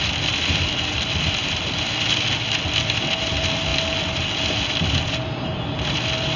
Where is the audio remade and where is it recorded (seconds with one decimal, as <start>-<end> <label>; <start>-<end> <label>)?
0.0-6.4 recorded